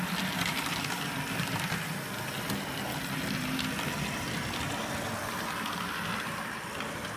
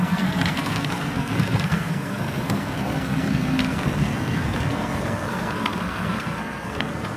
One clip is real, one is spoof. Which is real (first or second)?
first